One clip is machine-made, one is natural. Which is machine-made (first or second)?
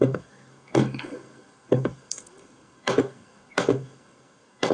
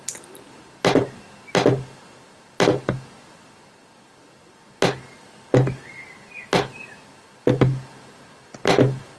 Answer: first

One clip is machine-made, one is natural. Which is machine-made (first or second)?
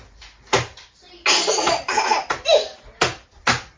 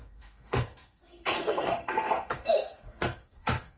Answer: second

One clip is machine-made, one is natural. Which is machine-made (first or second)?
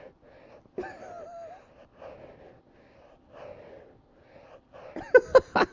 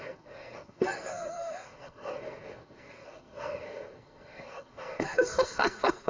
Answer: second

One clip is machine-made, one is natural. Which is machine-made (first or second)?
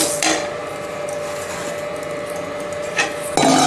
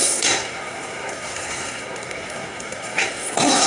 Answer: second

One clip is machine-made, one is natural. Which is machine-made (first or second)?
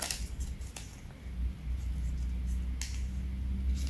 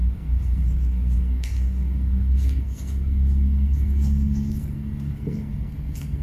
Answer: second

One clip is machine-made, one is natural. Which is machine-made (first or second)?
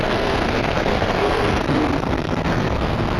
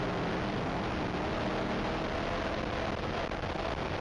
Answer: first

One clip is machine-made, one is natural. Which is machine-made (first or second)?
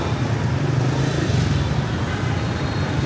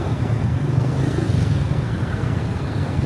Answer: second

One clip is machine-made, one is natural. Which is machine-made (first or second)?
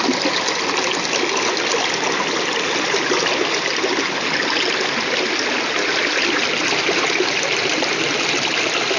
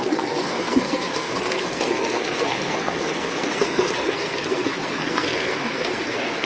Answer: second